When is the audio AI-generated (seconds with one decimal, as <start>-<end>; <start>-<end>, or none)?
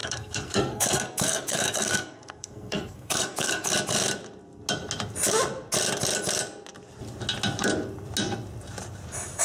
0.0-3.7